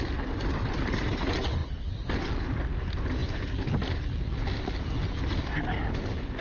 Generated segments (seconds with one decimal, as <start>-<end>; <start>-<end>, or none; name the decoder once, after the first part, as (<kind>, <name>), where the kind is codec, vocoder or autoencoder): none